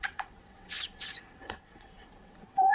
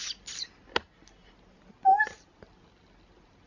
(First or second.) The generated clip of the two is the first